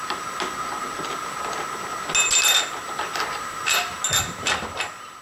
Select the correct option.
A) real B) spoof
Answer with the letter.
A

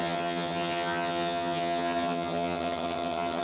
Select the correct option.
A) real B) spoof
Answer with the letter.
B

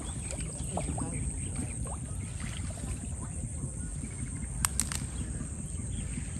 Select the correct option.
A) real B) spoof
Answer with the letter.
A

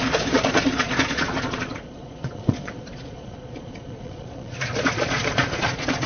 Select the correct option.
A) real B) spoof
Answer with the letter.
B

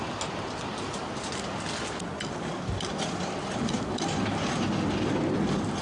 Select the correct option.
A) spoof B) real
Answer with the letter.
B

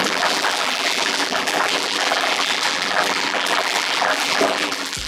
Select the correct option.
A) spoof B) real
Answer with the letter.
A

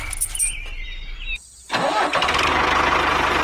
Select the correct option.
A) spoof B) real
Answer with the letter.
B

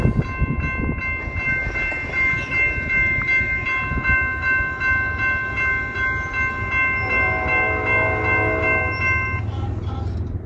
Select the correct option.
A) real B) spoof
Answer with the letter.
A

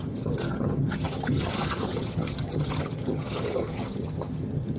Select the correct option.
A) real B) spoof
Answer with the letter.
B